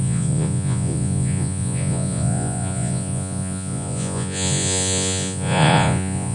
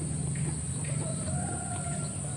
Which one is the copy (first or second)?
first